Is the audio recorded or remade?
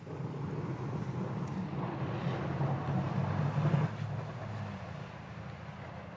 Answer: recorded